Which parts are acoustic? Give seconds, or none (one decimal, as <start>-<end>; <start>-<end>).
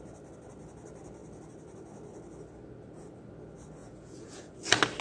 0.0-3.8; 4.5-5.0